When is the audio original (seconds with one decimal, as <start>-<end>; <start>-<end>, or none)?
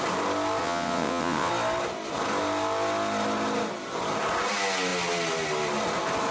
0.0-0.6; 1.5-6.3